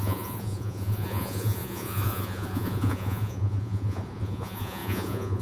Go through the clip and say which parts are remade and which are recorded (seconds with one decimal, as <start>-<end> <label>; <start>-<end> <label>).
0.0-5.4 remade